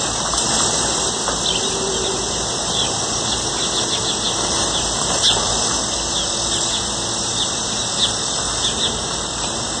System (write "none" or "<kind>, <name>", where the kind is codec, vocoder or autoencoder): none